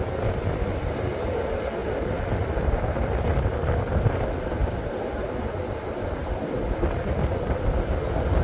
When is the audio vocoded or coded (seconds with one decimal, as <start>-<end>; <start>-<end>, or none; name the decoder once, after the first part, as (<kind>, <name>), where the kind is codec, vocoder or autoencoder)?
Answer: none